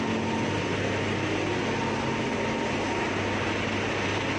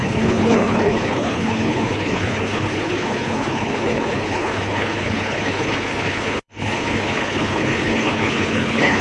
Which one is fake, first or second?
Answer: second